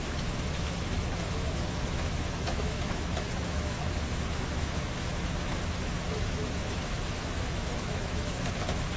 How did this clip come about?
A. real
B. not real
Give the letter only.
B